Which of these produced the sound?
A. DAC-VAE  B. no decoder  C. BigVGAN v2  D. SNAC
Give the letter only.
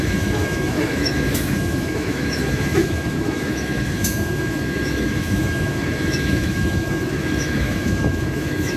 A